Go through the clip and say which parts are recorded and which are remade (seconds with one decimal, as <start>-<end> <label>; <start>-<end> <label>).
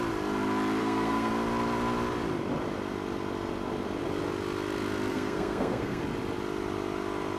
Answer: 0.0-0.8 recorded; 0.8-1.3 remade; 1.3-5.1 recorded; 5.1-6.0 remade; 6.0-7.4 recorded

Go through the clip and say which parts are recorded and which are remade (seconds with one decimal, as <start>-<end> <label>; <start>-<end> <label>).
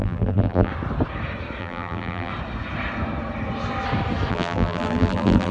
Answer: 0.0-0.7 remade; 0.7-1.6 recorded; 1.6-2.3 remade; 2.3-4.3 recorded; 4.3-5.5 remade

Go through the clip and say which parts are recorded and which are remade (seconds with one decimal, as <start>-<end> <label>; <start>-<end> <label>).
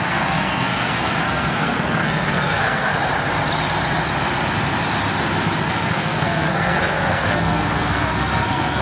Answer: 0.0-2.9 remade; 2.9-5.6 recorded; 5.6-8.8 remade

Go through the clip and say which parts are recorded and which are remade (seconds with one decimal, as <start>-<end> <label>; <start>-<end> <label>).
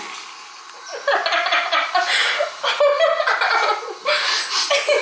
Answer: 0.0-5.0 recorded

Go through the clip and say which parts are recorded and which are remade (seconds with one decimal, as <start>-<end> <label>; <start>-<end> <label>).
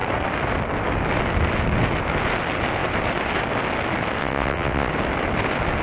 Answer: 0.0-4.2 recorded; 4.2-4.9 remade; 4.9-5.8 recorded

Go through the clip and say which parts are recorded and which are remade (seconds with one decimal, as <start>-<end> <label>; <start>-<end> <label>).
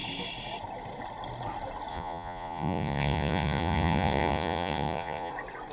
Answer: 0.0-1.9 recorded; 1.9-5.3 remade; 5.3-5.7 recorded